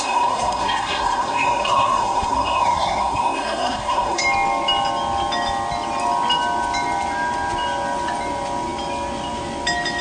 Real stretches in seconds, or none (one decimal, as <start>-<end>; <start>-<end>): 4.2-10.0